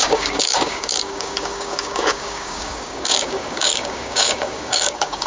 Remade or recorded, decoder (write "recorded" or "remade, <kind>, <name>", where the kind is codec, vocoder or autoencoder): remade, codec, DAC